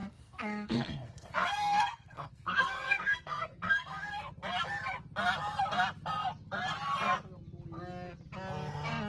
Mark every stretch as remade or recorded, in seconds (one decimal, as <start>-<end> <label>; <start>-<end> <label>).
0.0-4.3 remade; 4.3-9.1 recorded